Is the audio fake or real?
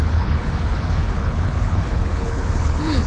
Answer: fake